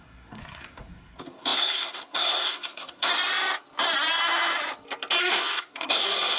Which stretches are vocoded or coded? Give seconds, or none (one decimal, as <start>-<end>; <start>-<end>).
0.0-3.1; 5.2-6.4